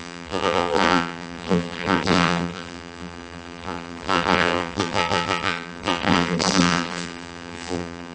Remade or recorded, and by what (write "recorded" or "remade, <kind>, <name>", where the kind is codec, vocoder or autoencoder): remade, vocoder, BigVGAN v2